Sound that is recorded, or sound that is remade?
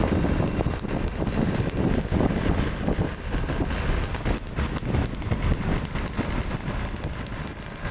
recorded